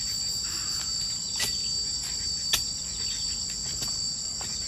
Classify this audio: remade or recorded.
recorded